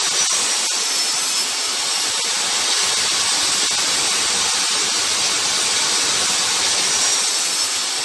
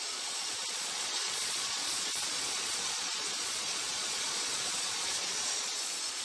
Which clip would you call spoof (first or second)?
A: second